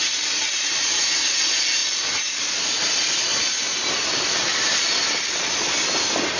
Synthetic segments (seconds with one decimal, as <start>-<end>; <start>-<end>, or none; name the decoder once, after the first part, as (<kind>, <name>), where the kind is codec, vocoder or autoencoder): none